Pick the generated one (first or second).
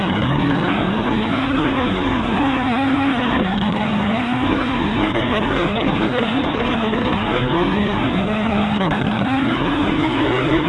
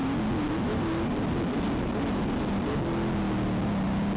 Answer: first